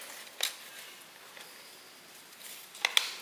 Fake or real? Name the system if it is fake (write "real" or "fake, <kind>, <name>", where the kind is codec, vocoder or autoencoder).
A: real